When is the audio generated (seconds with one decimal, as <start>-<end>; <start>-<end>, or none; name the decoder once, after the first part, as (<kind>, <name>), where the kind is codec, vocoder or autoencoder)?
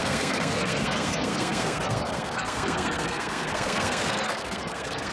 0.0-5.1 (codec, SNAC)